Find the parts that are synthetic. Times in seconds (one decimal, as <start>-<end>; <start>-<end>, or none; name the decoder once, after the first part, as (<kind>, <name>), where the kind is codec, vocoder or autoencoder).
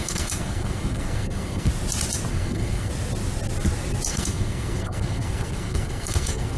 0.0-1.7 (codec, SNAC); 2.3-2.9; 4.1-6.6